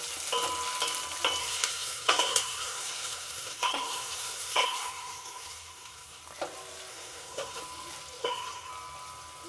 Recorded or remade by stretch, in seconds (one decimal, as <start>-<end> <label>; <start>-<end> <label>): 0.0-1.4 recorded; 1.4-6.2 remade; 6.2-6.9 recorded; 6.9-7.6 remade; 7.6-8.2 recorded; 8.2-8.7 remade; 8.7-9.5 recorded